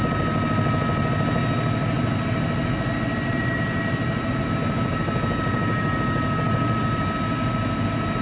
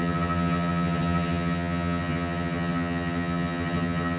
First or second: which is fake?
second